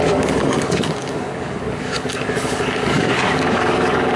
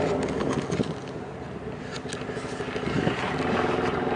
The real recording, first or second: second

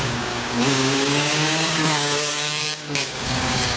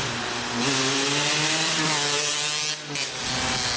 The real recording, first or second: second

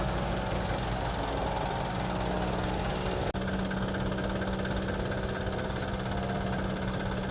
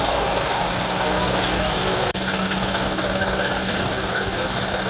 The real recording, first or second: first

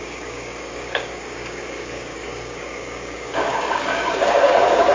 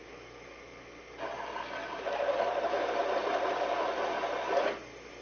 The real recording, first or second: second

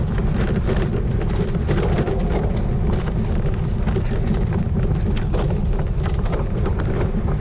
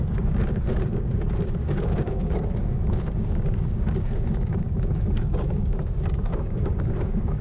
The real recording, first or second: first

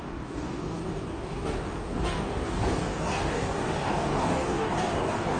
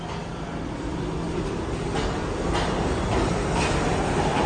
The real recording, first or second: second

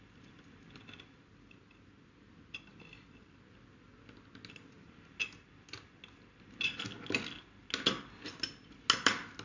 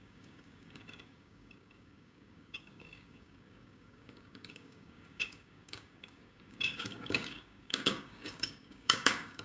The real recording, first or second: first